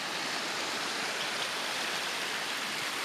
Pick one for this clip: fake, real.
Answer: real